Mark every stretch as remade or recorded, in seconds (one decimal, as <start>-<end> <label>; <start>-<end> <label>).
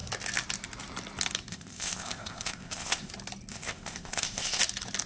0.0-1.5 recorded; 1.5-3.1 remade; 3.1-3.5 recorded; 3.5-4.6 remade; 4.6-5.1 recorded